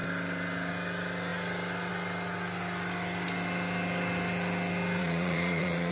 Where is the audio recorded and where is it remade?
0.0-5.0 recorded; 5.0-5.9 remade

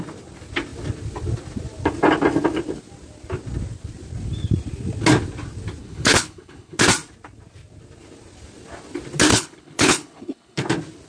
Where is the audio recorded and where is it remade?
0.0-5.8 recorded; 5.8-6.8 remade; 6.8-9.3 recorded; 9.3-10.6 remade; 10.6-11.1 recorded

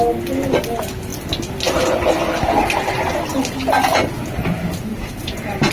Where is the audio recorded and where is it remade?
0.0-4.9 recorded; 4.9-5.7 remade

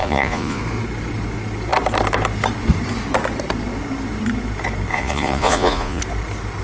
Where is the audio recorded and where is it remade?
0.0-0.6 remade; 0.6-4.9 recorded; 4.9-6.0 remade; 6.0-6.6 recorded

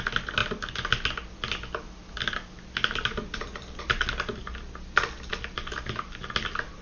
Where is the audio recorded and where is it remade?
0.0-6.8 recorded

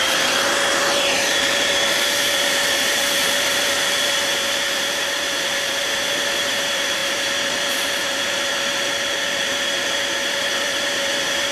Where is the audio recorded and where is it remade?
0.0-11.5 remade

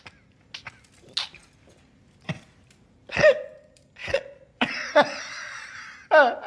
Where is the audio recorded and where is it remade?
0.0-4.0 recorded; 4.0-5.7 remade; 5.7-6.5 recorded